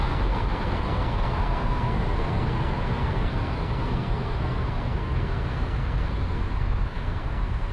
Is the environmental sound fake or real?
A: fake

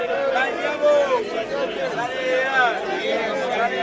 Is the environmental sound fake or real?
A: real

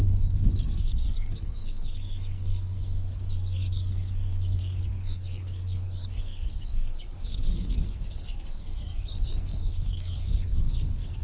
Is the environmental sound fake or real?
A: fake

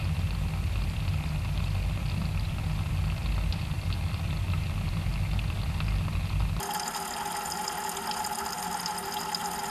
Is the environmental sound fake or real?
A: real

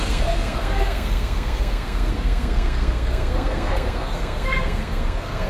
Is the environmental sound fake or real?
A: fake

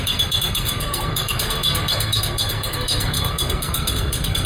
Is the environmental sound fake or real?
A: fake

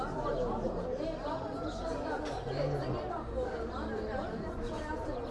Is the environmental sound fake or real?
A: real